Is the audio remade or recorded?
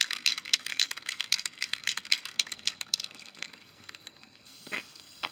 remade